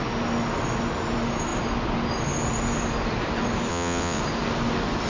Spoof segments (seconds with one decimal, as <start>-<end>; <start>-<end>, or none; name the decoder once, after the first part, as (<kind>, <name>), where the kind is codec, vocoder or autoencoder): 3.7-4.2 (vocoder, WaveNeXt)